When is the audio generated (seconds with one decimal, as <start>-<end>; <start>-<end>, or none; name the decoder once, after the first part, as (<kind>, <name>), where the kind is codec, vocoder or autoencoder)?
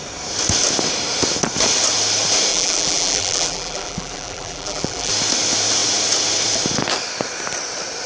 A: 2.5-5.1 (vocoder, BigVGAN v2)